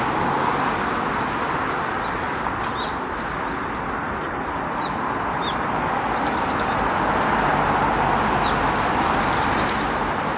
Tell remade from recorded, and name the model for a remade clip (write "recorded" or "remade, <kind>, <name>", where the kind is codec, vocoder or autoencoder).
recorded